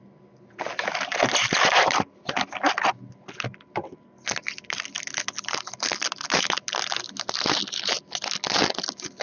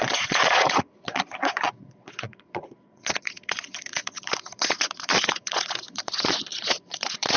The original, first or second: first